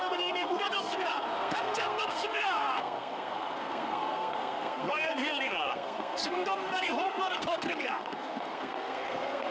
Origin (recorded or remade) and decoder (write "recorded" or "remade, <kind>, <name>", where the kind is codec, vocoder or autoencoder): remade, codec, SNAC